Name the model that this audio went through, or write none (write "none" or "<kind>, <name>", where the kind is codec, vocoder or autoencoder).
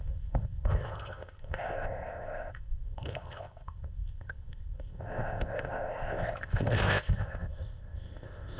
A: codec, ZipCodec